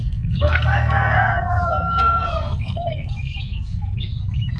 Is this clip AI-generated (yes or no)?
yes